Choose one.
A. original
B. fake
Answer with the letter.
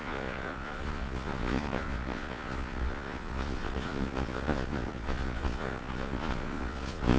B